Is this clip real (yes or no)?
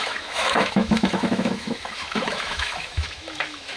no